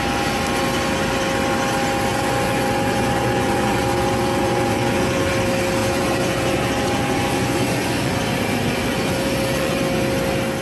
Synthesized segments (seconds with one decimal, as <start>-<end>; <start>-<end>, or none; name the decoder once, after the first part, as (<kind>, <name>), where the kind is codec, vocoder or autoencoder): 2.1-5.3 (vocoder, Vocos); 5.8-8.2; 8.9-9.8